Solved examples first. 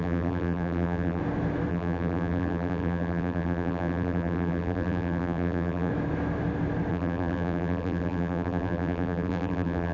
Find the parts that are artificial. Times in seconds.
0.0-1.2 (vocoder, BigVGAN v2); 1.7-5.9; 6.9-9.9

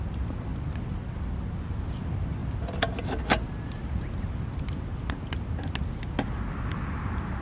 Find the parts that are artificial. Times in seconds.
0.5-1.6 (vocoder, BigVGAN v2); 2.4-3.9

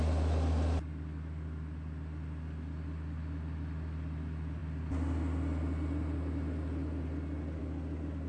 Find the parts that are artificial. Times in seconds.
none

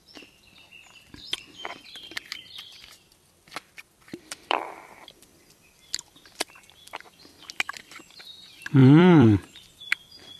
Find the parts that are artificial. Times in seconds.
3.1-4.7 (vocoder, BigVGAN v2); 8.8-9.7

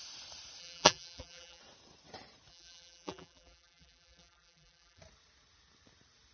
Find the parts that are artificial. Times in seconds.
0.6-1.6 (vocoder, BigVGAN v2); 2.5-5.0

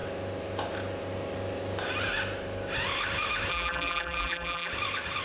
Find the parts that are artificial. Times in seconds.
3.5-4.7 (vocoder, BigVGAN v2)

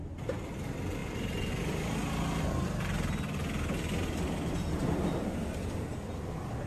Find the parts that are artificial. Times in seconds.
1.0-1.5 (vocoder, BigVGAN v2)